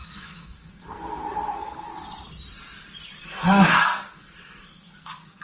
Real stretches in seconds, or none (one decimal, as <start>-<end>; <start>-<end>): 1.9-3.2